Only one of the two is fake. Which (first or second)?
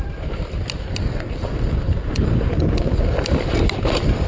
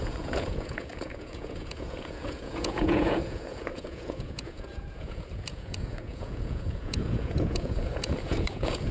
second